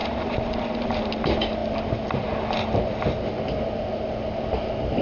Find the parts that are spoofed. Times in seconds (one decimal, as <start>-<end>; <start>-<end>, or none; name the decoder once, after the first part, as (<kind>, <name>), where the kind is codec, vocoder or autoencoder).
0.0-1.0 (vocoder, BigVGAN v2)